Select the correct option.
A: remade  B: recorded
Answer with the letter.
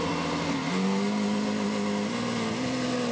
B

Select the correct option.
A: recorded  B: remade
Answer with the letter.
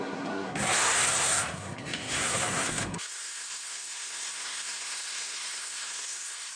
B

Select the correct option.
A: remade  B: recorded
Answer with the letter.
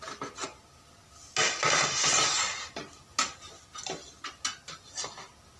B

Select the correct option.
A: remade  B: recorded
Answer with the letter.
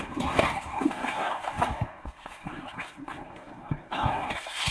A